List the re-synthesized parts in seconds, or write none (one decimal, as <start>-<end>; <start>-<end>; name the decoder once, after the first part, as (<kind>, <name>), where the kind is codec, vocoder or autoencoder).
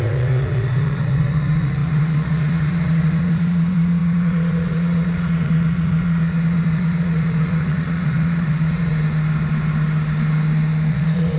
0.0-8.9 (vocoder, Vocos); 10.9-11.4